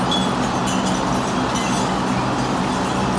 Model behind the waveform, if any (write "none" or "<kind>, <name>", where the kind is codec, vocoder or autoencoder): none